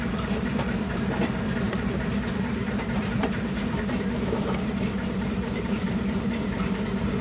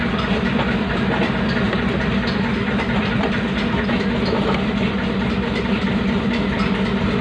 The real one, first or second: second